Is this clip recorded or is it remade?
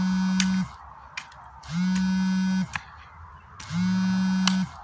recorded